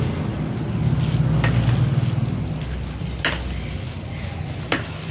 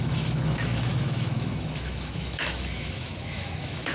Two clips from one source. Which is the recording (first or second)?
first